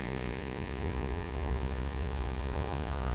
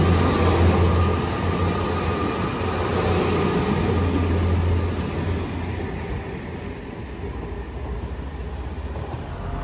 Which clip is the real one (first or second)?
second